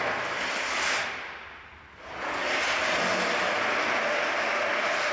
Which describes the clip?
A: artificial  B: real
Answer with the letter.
B